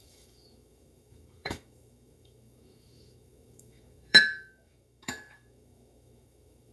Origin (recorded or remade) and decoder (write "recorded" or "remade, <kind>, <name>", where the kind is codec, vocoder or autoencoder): remade, autoencoder, DAC-VAE